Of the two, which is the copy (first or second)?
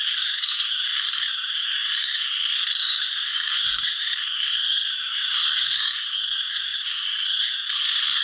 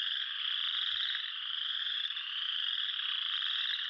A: first